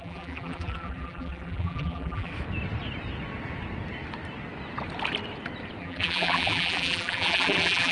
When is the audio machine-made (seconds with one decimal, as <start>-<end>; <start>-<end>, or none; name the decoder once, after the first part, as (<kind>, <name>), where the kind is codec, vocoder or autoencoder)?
0.0-2.3 (vocoder, BigVGAN v2); 5.8-7.9